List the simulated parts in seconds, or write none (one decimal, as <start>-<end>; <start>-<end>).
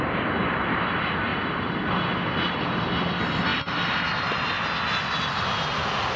none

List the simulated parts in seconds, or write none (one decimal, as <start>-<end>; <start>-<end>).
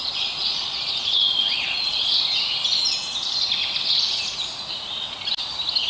0.0-2.1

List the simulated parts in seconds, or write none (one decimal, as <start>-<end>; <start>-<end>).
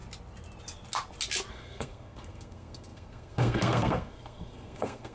1.5-5.1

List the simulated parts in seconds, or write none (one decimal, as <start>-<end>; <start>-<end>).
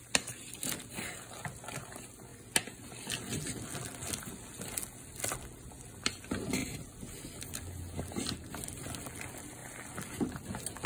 none